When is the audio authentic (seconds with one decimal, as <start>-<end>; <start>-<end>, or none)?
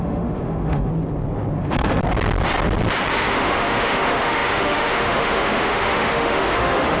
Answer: 0.9-1.6; 2.0-3.1